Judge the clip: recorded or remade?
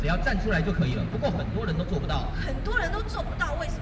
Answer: recorded